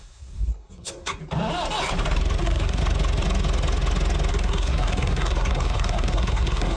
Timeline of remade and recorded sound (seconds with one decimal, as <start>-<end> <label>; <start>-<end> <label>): 0.0-1.2 remade; 1.2-2.4 recorded; 2.4-2.8 remade; 2.8-4.3 recorded; 4.3-6.8 remade